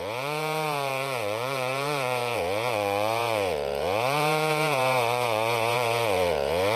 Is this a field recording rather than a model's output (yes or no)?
no